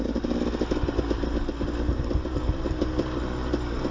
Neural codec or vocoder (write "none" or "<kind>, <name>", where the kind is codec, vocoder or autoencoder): none